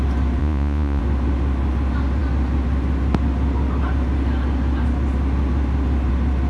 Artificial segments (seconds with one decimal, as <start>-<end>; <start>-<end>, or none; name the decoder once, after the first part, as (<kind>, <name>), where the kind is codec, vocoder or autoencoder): 0.4-1.0 (vocoder, Vocos)

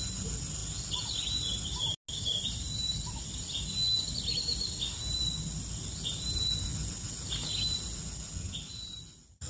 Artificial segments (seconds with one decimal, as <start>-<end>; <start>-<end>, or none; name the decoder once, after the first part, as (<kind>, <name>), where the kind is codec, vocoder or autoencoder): none

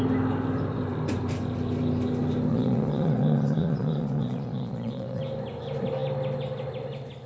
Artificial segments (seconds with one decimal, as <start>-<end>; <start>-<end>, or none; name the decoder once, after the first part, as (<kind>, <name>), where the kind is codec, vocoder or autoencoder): 2.5-5.2 (vocoder, Vocos)

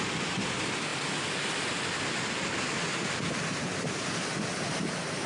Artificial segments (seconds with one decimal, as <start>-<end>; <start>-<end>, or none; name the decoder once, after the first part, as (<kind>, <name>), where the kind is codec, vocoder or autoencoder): none

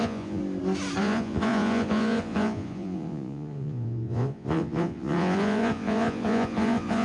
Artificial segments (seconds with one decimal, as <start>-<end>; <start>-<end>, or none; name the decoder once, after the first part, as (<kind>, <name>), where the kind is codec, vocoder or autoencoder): 0.0-0.4 (vocoder, Vocos); 1.0-7.0